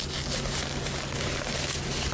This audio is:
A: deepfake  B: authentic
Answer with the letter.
B